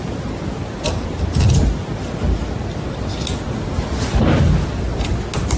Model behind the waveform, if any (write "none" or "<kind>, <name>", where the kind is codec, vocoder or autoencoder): none